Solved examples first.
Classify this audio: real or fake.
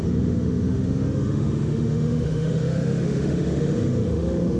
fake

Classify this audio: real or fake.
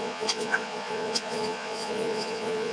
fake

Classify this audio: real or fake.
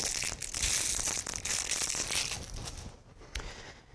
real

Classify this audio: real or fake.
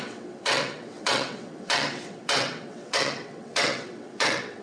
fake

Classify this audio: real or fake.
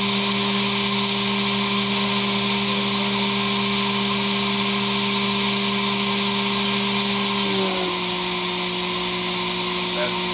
real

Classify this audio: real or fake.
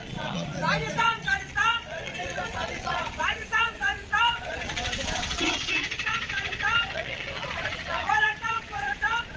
fake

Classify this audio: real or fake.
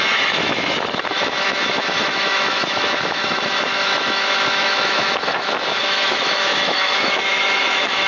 fake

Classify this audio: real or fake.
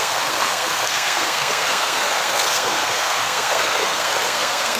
fake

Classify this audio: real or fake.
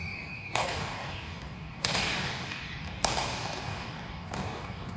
fake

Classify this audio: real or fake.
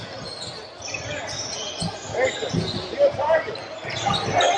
real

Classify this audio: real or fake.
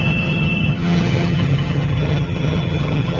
fake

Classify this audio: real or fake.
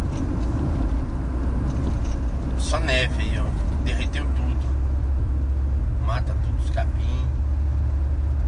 real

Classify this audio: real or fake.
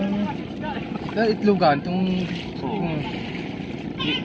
real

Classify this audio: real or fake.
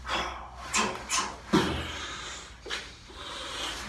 real